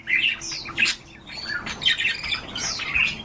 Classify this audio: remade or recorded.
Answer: recorded